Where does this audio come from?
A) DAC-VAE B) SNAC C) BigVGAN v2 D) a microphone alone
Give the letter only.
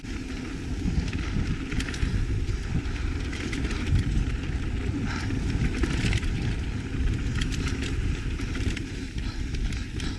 C